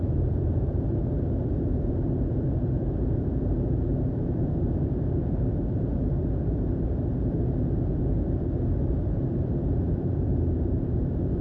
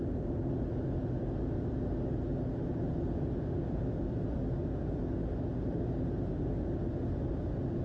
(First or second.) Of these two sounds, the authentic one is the second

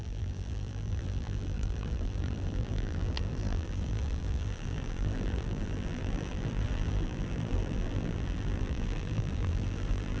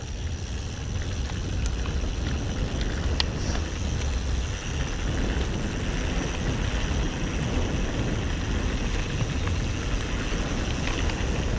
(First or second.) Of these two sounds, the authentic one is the second